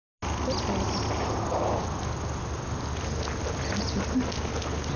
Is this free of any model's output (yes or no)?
yes